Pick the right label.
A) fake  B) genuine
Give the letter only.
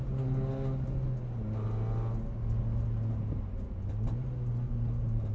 B